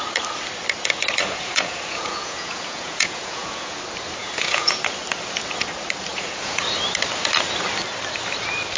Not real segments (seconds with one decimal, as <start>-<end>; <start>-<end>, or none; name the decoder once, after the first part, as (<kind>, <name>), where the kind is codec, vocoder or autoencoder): 1.2-3.8 (vocoder, Vocos); 4.2-4.9; 6.1-6.6